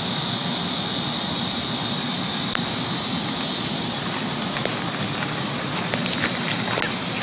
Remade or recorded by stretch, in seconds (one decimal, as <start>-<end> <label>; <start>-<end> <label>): 0.0-7.2 recorded